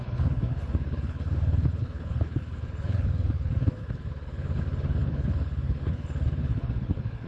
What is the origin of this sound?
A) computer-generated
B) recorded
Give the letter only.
A